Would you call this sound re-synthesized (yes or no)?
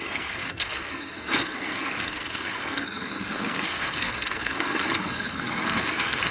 yes